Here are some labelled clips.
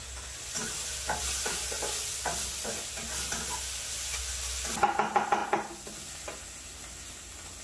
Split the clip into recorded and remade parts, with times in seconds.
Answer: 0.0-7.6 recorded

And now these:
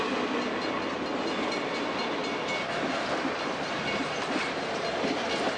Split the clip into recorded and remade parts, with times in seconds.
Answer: 0.0-5.6 recorded

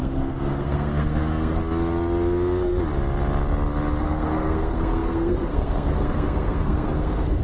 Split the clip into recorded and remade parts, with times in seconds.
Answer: 0.0-1.6 remade; 1.6-4.0 recorded; 4.0-7.4 remade

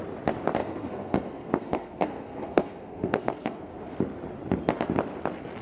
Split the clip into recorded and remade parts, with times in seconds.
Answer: 0.0-0.6 recorded; 0.6-4.0 remade; 4.0-5.6 recorded

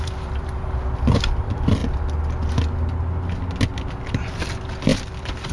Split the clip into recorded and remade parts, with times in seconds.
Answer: 0.0-1.8 remade; 1.8-3.9 recorded; 3.9-5.5 remade

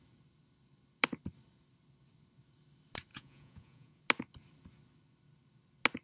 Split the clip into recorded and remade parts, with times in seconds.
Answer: 0.0-3.1 recorded; 3.1-4.0 remade; 4.0-6.0 recorded